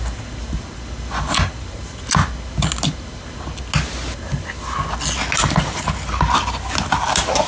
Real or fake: real